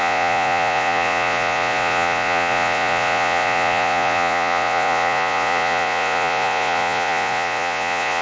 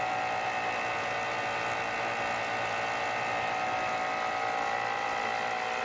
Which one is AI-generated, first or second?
first